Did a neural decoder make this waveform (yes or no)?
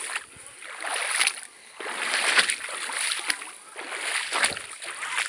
no